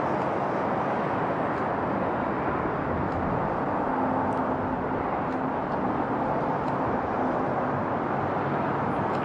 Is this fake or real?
real